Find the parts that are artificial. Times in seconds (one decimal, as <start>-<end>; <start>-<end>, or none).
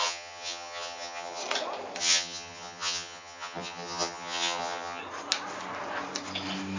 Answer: 0.0-1.4; 2.0-5.0